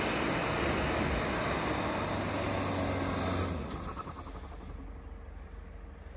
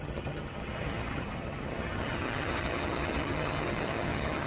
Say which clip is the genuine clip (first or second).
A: first